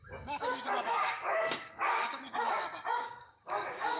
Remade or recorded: remade